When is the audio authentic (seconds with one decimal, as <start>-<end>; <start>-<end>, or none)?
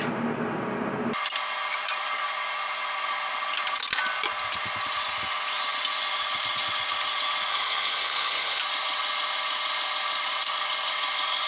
0.0-7.5; 8.6-11.5